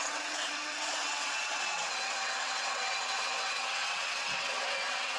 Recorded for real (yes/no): no